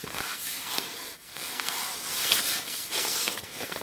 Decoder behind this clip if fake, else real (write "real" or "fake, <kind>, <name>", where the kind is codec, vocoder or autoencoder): fake, codec, SNAC